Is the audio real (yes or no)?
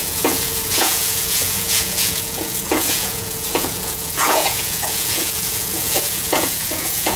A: no